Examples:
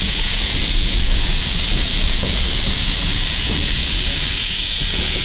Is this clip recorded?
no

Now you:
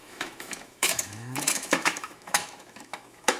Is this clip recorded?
no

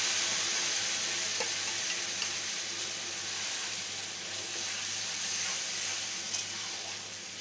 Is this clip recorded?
yes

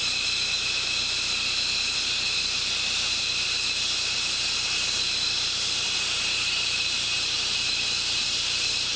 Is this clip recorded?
no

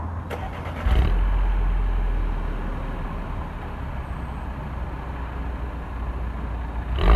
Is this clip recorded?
yes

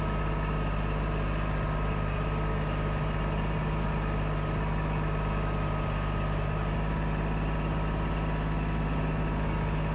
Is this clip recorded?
yes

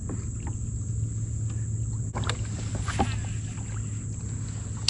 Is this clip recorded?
yes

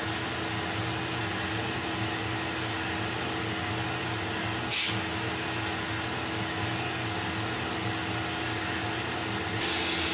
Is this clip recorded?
yes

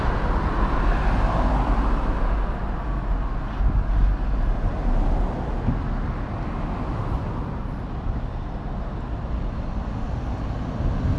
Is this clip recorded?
yes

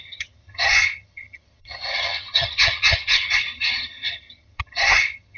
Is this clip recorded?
no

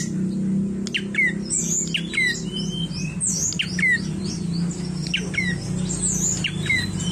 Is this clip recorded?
yes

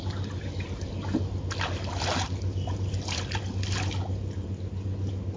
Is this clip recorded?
yes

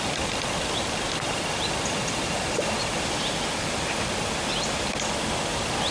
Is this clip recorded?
yes